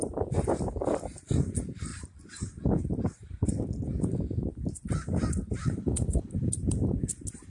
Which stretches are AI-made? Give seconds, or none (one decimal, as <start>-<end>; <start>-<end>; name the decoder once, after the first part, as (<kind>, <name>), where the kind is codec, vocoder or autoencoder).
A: 5.6-6.5 (codec, HILCodec)